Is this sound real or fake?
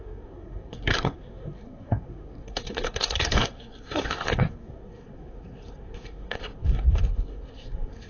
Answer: fake